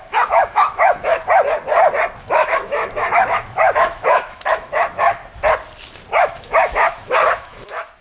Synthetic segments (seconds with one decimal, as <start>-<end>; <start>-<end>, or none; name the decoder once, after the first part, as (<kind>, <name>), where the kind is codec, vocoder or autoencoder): 0.0-1.1 (autoencoder, DAC-VAE); 2.3-5.2; 6.2-8.0